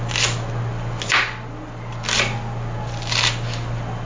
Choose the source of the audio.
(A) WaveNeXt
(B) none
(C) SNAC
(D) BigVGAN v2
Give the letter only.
B